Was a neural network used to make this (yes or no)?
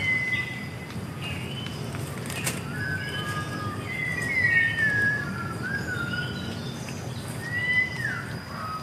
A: no